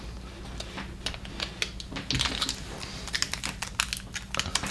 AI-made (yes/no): no